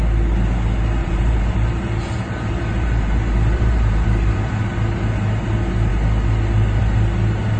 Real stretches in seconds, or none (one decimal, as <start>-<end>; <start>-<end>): 0.0-1.0; 4.5-7.6